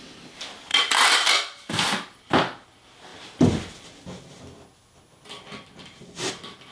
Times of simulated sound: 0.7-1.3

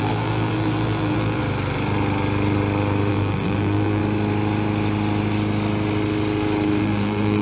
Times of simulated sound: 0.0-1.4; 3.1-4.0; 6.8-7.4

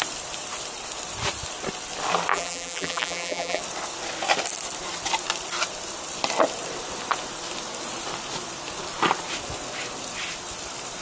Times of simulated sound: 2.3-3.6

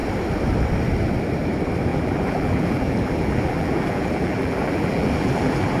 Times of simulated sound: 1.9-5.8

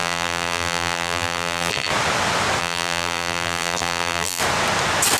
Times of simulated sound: 0.0-1.9; 2.6-4.4